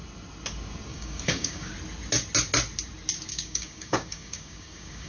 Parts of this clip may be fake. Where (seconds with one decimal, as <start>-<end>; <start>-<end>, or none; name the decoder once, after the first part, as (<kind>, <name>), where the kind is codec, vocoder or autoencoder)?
0.9-1.7 (codec, DAC); 3.3-5.1